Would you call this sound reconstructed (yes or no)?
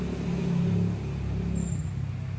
no